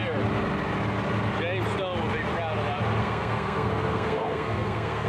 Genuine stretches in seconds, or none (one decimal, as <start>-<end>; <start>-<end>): 0.0-3.0